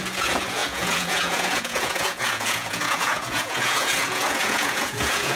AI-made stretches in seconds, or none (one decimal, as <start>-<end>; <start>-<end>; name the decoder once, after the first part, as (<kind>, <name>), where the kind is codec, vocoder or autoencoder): 0.0-5.4 (vocoder, Vocos)